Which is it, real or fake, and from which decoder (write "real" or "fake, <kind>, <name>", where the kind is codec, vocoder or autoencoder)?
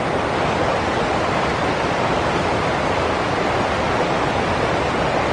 real